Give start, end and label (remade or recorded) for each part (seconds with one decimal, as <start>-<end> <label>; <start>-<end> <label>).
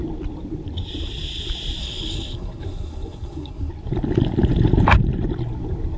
0.0-1.8 recorded; 1.8-3.7 remade; 3.7-6.0 recorded